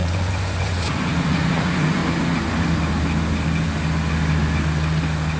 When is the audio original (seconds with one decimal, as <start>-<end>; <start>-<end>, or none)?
2.0-5.4